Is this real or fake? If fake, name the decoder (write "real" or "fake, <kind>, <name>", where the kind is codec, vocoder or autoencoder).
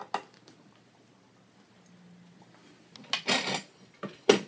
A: real